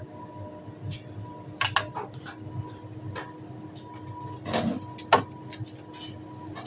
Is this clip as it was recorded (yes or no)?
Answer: yes